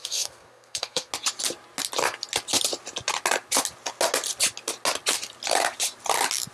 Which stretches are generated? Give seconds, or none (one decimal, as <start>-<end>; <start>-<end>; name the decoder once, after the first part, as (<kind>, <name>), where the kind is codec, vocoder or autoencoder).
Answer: 0.0-1.1 (codec, SNAC)